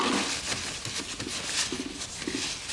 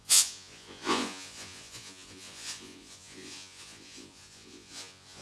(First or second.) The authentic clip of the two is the first